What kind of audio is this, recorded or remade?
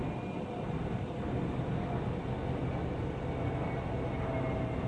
recorded